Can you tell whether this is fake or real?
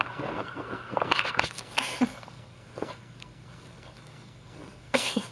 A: fake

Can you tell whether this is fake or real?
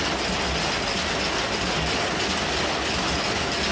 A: real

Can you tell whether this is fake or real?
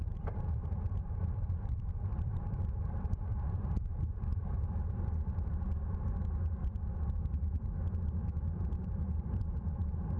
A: fake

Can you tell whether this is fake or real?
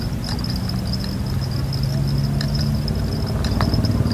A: real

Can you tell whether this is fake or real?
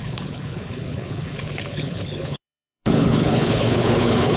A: fake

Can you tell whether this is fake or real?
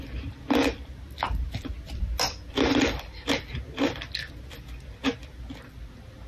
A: real